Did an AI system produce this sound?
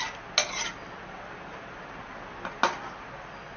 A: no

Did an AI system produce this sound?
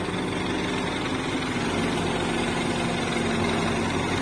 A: no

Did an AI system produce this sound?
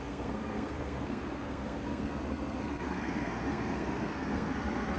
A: yes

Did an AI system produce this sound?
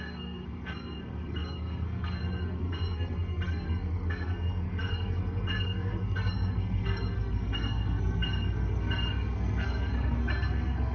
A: yes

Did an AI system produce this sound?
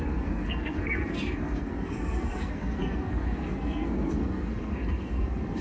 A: yes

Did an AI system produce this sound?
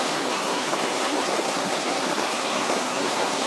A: yes